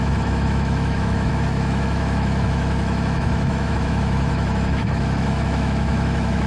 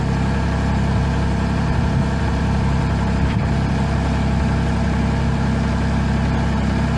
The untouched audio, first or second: second